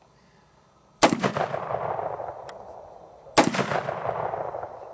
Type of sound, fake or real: real